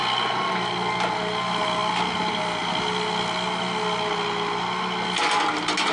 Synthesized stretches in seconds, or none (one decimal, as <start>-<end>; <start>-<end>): none